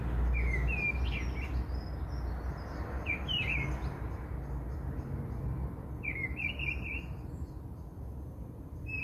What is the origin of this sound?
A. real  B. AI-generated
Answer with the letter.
A